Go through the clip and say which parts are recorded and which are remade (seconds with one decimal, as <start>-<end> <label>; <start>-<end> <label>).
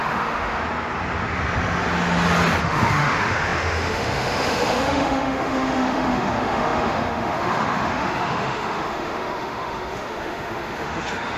0.0-0.6 remade; 0.6-2.6 recorded; 2.6-11.4 remade